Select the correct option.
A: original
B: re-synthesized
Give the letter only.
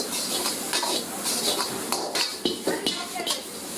A